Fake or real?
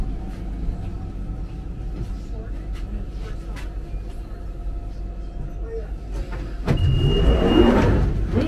real